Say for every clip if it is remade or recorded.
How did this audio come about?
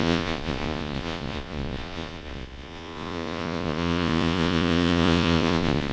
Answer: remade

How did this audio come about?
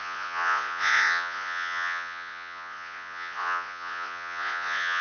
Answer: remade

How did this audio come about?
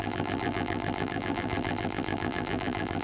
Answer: remade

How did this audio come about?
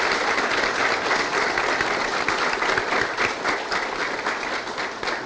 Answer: recorded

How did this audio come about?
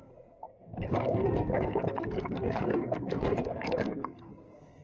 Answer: remade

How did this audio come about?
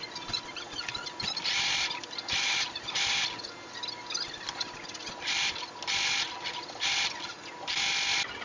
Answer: recorded